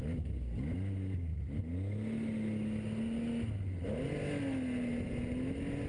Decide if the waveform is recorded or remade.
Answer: recorded